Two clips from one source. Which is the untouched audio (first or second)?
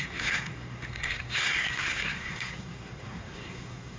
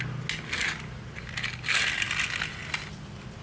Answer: second